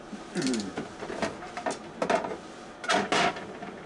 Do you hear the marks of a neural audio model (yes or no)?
no